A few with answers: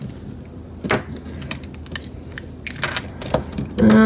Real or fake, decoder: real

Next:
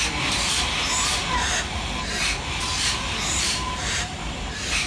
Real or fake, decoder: fake, vocoder, BigVGAN v2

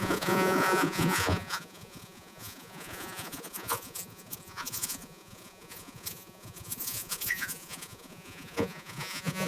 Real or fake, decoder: fake, vocoder, Vocos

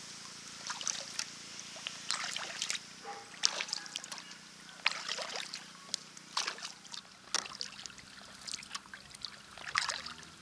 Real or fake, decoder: real